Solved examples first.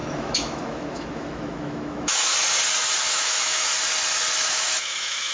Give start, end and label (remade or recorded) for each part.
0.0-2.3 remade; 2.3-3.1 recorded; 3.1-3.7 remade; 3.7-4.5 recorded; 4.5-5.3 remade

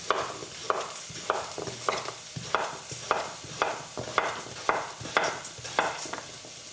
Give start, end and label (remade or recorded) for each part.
0.0-6.7 recorded

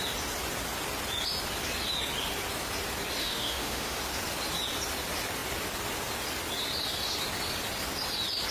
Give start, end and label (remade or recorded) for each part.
0.0-3.2 recorded; 3.2-4.0 remade; 4.0-8.5 recorded

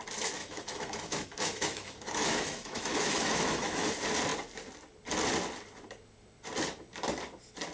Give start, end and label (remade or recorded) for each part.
0.0-0.4 recorded; 0.4-3.9 remade; 3.9-7.7 recorded

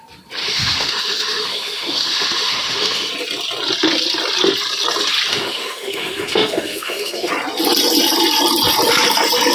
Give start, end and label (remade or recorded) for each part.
0.0-0.4 recorded; 0.4-3.1 remade; 3.1-5.3 recorded; 5.3-7.3 remade; 7.3-9.5 recorded

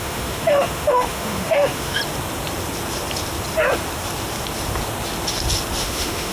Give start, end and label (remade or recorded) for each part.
0.0-2.0 remade; 2.0-5.8 recorded; 5.8-6.3 remade

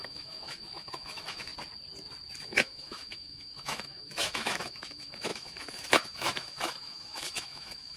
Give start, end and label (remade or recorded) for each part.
0.0-1.5 remade; 1.5-2.4 recorded; 2.4-8.0 remade

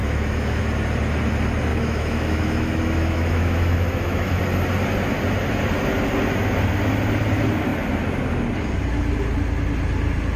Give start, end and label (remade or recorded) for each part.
0.0-0.6 remade; 0.6-1.7 recorded; 1.7-4.4 remade; 4.4-10.4 recorded